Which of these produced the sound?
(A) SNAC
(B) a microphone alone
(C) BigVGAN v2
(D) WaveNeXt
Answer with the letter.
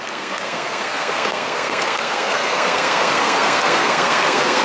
A